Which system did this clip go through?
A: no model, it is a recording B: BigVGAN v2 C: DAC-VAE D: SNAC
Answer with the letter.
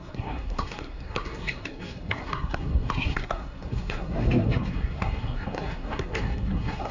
D